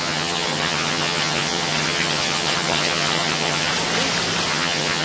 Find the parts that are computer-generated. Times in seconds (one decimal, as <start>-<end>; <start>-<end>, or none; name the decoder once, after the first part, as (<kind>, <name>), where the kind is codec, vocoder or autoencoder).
0.0-3.7 (vocoder, HiFi-GAN); 4.5-5.0